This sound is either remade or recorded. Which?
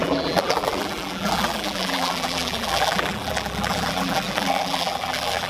remade